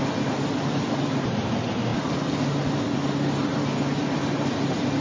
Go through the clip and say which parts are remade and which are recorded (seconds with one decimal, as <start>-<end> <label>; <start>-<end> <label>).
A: 0.0-5.0 recorded